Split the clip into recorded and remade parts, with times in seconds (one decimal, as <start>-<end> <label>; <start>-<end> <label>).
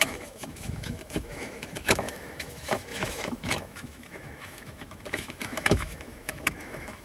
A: 0.0-7.0 remade